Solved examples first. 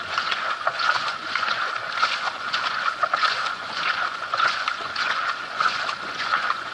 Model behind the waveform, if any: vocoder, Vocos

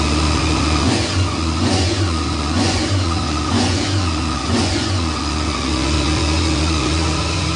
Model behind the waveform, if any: vocoder, Vocos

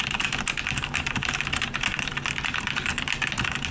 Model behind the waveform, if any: none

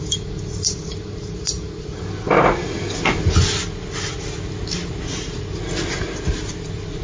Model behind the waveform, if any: none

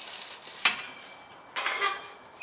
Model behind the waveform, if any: none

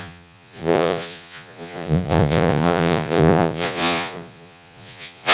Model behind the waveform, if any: vocoder, Vocos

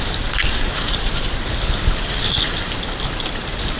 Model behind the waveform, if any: none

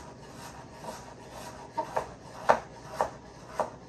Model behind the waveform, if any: vocoder, Vocos